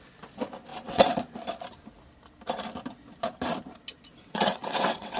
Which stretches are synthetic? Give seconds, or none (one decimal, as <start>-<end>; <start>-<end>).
0.7-1.2; 4.2-5.2